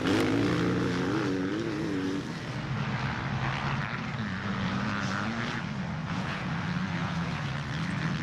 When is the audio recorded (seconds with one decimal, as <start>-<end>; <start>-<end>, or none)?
0.0-6.0; 6.5-7.0; 7.5-8.2

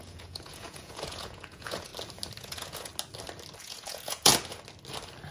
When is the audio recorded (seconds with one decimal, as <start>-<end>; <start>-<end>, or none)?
1.9-2.4; 2.9-3.6; 4.3-5.3